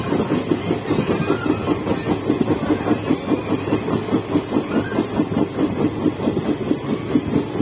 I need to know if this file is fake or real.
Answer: real